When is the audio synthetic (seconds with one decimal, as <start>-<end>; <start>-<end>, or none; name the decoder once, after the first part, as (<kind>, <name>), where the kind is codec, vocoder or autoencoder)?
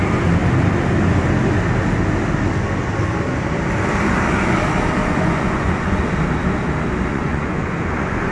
5.0-6.0 (vocoder, Vocos); 7.1-8.3